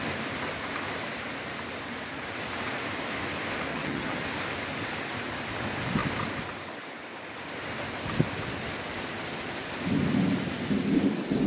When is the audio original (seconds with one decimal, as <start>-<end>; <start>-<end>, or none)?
0.0-3.7; 4.2-11.5